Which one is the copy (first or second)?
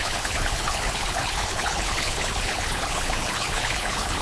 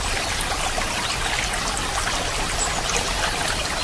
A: first